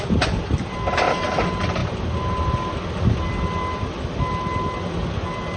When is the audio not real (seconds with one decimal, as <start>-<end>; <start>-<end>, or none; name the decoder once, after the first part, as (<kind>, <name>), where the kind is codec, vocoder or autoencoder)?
none